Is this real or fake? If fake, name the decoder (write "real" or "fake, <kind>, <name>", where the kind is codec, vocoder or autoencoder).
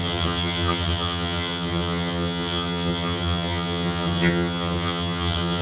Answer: fake, vocoder, HiFi-GAN